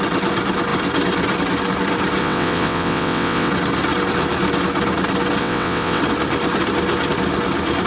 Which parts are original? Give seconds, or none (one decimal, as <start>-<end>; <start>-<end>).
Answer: 0.0-2.2; 3.5-5.4; 6.0-7.9